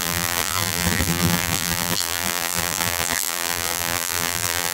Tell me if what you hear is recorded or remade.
remade